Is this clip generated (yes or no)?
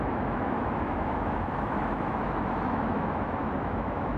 yes